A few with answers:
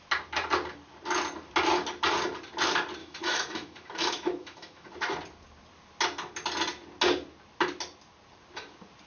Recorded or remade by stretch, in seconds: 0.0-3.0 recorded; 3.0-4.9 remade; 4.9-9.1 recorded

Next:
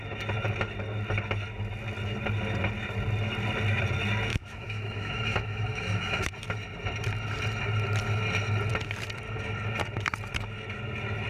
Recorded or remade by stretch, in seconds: 0.0-4.3 recorded; 4.3-6.3 remade; 6.3-11.3 recorded

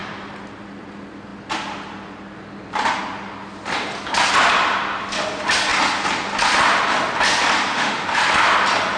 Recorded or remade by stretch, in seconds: 0.0-7.7 recorded; 7.7-8.2 remade; 8.2-9.0 recorded

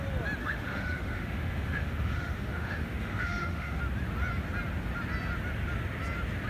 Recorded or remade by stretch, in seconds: 0.0-0.4 recorded; 0.4-3.8 remade; 3.8-6.5 recorded

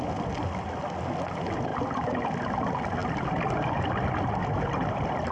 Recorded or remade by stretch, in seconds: 0.0-5.3 recorded